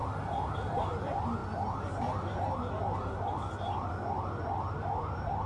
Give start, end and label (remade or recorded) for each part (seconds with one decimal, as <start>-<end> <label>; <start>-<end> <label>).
0.0-5.5 recorded